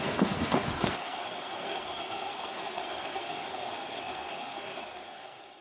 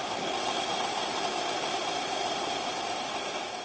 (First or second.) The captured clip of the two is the second